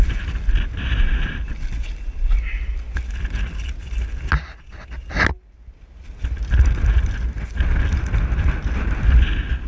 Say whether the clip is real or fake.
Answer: real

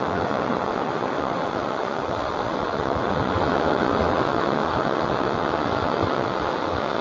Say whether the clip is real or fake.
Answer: fake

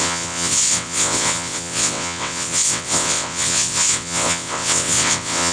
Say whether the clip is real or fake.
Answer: fake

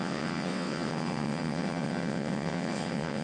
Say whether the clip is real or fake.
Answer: fake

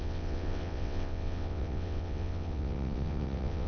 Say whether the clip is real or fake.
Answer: fake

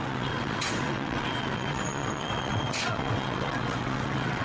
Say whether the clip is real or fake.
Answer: fake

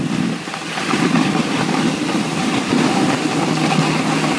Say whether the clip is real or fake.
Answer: real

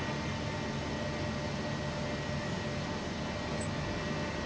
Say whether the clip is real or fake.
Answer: real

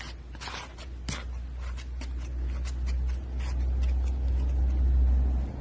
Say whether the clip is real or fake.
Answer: real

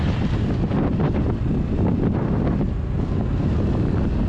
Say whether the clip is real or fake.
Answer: real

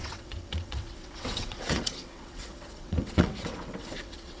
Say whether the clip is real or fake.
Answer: fake